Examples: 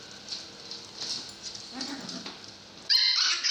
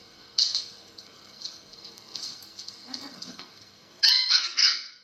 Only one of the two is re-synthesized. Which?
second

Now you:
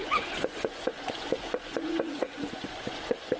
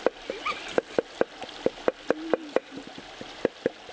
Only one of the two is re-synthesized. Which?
first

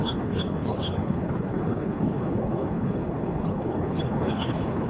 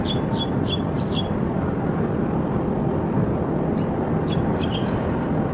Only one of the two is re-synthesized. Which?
first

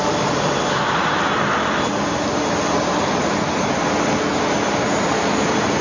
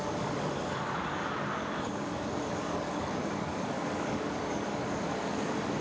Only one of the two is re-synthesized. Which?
second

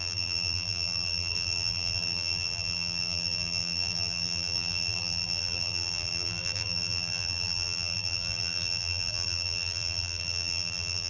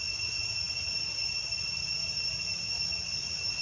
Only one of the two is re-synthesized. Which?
first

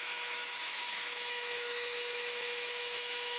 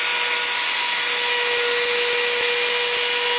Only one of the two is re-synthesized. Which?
first